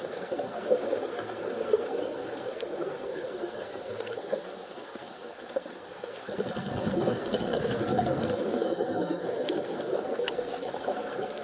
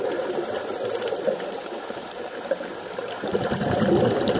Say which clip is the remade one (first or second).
first